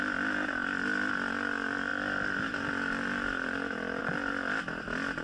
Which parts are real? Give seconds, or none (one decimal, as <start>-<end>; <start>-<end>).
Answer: 0.0-5.2